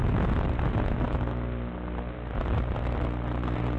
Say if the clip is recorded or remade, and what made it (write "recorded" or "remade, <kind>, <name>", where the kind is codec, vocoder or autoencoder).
recorded